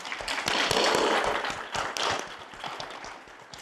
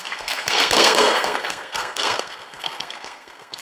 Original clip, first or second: first